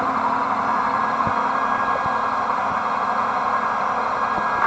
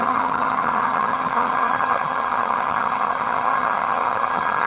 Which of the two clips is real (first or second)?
first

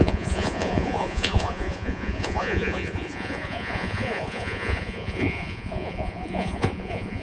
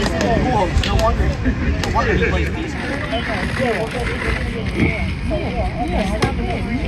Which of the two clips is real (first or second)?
second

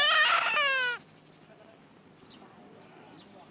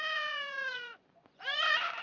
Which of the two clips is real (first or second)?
first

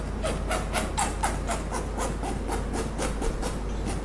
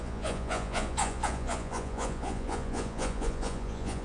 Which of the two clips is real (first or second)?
first